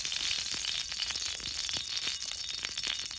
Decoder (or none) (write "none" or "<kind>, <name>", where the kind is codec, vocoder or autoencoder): none